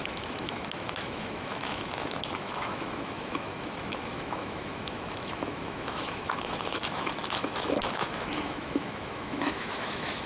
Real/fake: fake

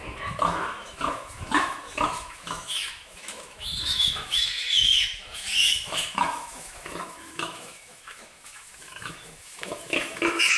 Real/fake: fake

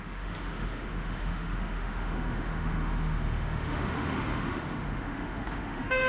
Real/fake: fake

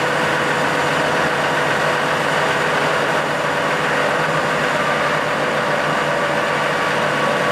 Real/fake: real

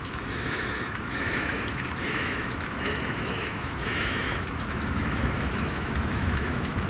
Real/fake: fake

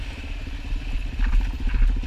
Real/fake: real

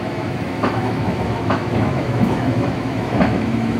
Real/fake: fake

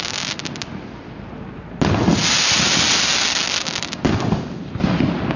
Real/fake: real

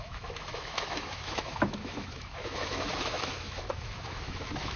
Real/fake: fake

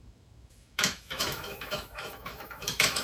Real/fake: fake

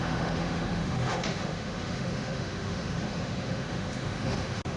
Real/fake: fake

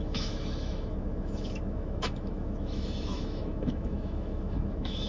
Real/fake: fake